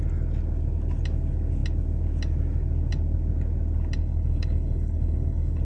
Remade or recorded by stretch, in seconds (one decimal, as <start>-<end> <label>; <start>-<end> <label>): 0.0-4.0 recorded; 4.0-5.6 remade